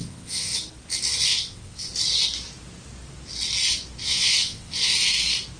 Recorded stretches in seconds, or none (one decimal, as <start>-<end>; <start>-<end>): 0.5-1.3; 1.9-4.0; 4.9-5.6